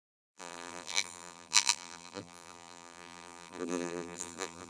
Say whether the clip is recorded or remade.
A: remade